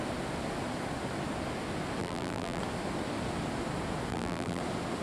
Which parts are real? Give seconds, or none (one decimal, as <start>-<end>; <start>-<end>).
0.0-2.0; 2.6-4.1; 4.6-5.0